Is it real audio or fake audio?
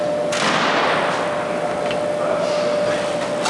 real